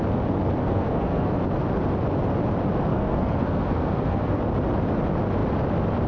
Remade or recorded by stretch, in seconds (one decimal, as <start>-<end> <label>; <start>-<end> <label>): 0.0-0.6 recorded; 0.6-1.3 remade; 1.3-2.9 recorded; 2.9-4.4 remade; 4.4-6.1 recorded